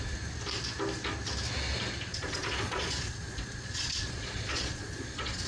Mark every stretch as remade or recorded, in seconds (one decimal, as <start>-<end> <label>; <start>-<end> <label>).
0.0-2.1 recorded; 2.1-5.5 remade